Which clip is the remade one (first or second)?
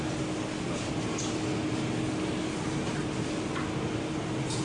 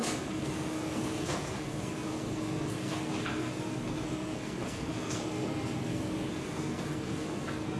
second